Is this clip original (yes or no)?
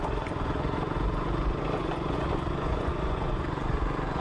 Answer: no